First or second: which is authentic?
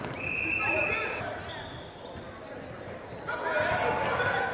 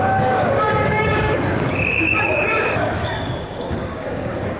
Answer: first